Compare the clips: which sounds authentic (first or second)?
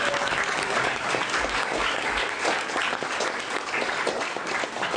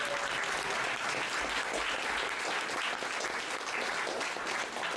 second